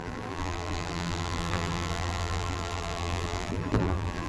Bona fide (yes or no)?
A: no